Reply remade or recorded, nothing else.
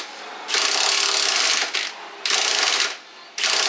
recorded